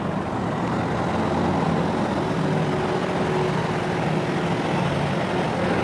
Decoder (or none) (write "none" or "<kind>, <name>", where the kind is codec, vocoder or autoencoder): none